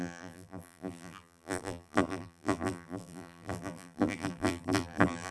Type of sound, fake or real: fake